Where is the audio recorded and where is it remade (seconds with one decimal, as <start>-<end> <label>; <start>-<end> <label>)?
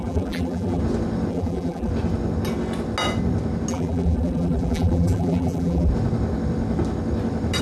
0.0-0.8 remade; 0.8-1.3 recorded; 1.3-1.9 remade; 1.9-3.7 recorded; 3.7-5.9 remade; 5.9-7.6 recorded